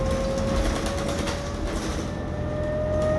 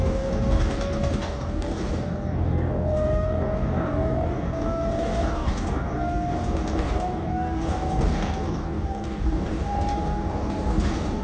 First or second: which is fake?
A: second